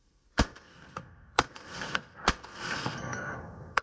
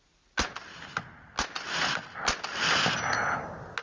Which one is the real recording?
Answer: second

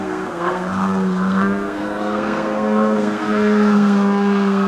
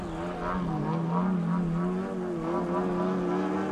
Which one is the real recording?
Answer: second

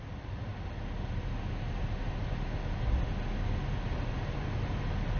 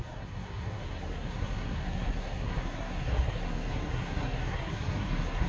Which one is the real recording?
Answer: first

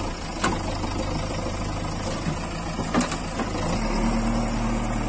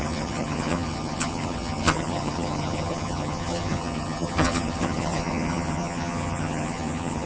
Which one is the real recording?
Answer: first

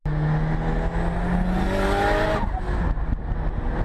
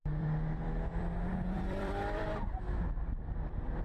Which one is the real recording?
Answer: first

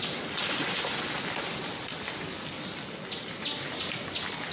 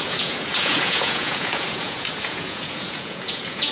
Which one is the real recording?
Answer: first